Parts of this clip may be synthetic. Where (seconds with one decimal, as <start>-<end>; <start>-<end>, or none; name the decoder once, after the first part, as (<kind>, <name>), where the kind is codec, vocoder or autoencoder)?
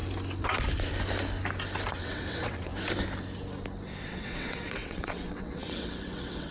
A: 1.9-2.7 (vocoder, WaveNeXt); 4.1-6.5